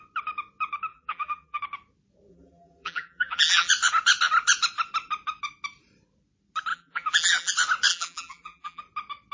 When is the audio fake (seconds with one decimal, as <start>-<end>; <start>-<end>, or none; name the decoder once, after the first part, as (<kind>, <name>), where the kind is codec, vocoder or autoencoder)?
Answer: 0.9-1.6 (vocoder, BigVGAN v2); 2.3-3.7; 6.7-7.5; 7.9-8.8